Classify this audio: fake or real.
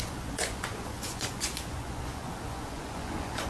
fake